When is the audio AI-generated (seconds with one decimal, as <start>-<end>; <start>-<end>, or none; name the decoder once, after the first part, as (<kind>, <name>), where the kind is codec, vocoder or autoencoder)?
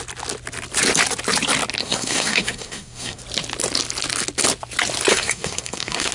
1.8-3.2 (codec, SNAC); 5.1-6.1